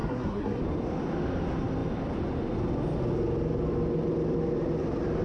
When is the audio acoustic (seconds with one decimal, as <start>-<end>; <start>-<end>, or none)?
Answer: 0.6-5.2